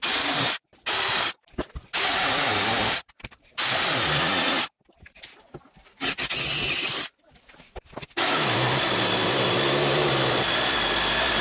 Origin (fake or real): real